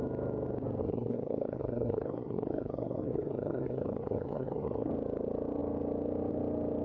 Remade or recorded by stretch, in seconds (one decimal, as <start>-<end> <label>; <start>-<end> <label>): 0.0-0.8 recorded; 0.8-4.9 remade; 4.9-6.8 recorded

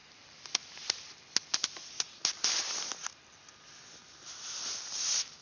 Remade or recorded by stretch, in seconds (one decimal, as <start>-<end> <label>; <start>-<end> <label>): 0.0-5.4 recorded